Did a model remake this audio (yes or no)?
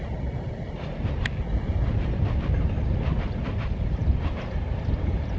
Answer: no